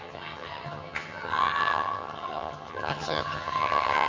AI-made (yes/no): yes